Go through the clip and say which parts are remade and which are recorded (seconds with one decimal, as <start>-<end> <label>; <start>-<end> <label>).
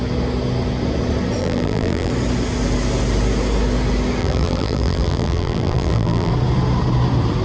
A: 0.0-1.4 recorded; 1.4-2.1 remade; 2.1-4.2 recorded; 4.2-6.3 remade; 6.3-7.4 recorded